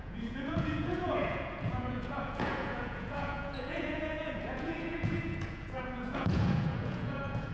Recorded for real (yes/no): no